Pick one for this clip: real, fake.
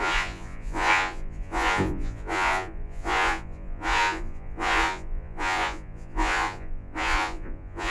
fake